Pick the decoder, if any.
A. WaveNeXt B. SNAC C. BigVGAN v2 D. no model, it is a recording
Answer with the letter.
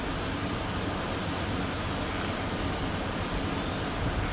D